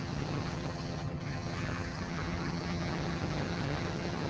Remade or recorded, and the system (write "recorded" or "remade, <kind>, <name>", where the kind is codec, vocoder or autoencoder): remade, vocoder, HiFi-GAN